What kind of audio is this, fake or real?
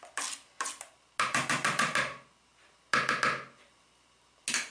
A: real